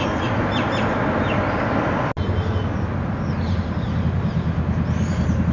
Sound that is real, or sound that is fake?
real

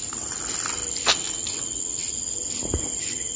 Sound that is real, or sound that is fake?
real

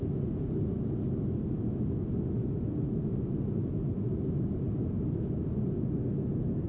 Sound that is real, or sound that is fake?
real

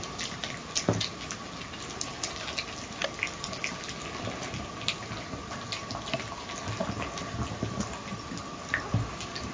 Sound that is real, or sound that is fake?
real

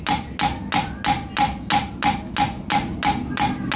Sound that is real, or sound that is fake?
real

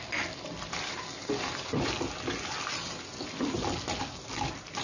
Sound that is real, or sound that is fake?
real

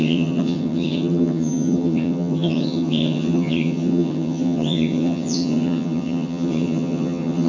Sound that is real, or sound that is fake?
fake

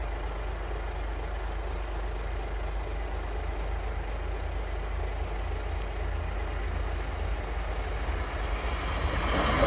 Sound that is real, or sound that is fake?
real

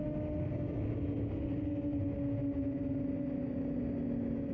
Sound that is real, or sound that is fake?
real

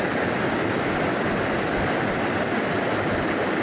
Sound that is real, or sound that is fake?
real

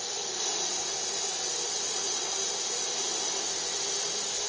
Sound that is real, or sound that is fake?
real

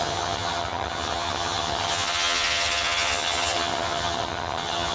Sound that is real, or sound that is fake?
fake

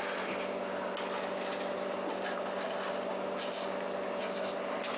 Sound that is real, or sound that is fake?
real